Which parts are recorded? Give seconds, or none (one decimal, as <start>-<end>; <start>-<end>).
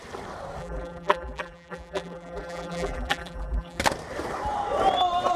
0.0-0.6; 3.8-5.4